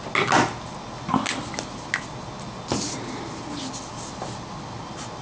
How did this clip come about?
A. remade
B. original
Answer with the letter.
B